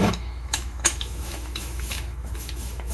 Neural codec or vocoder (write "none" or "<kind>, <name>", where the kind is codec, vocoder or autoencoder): autoencoder, DAC-VAE